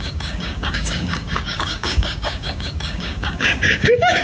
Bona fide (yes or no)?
no